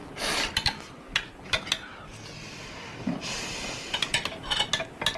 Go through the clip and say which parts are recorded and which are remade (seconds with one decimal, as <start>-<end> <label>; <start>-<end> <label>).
0.0-5.2 recorded